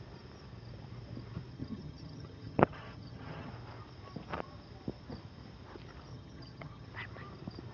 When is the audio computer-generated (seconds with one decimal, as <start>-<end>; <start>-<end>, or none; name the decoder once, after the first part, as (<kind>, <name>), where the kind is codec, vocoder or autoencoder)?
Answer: 1.5-3.5 (vocoder, HiFi-GAN); 6.1-6.9